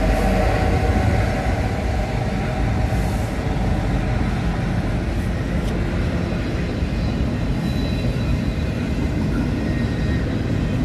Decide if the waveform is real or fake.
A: real